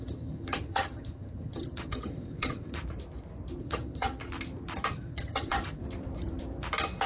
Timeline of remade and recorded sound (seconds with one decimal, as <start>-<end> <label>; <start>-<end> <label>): 0.0-2.8 remade; 2.8-3.6 recorded; 3.6-4.2 remade; 4.2-4.9 recorded; 4.9-5.8 remade; 5.8-7.1 recorded